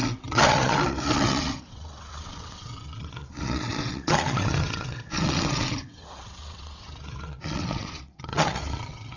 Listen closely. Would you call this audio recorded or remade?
remade